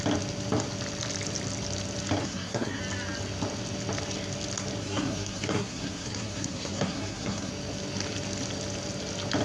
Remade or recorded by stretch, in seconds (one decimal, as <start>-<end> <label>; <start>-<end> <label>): 0.0-2.2 recorded; 2.2-2.8 remade; 2.8-4.8 recorded; 4.8-7.5 remade; 7.5-9.4 recorded